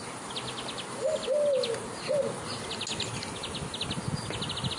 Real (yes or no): yes